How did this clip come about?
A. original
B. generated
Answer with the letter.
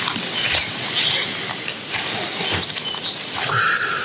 B